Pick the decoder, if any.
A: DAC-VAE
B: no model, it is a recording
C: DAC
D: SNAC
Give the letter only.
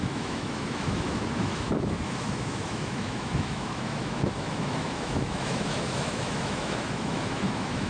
A